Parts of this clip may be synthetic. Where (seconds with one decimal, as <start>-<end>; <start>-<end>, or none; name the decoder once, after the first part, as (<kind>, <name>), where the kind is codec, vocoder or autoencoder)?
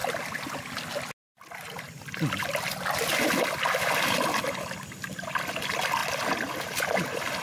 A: none